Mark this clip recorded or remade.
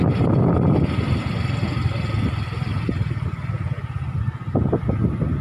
recorded